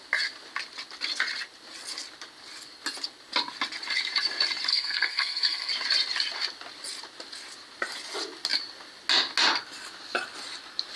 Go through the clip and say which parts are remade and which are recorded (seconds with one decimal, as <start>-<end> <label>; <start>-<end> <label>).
0.0-4.7 recorded; 4.7-5.7 remade; 5.7-11.0 recorded